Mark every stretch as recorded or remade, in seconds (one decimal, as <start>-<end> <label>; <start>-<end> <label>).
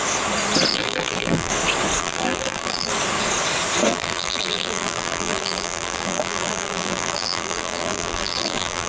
0.0-0.7 recorded; 0.7-1.5 remade; 1.5-2.0 recorded; 2.0-2.9 remade; 2.9-3.9 recorded; 3.9-8.9 remade